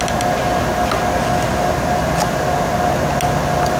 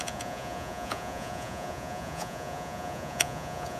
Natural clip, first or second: first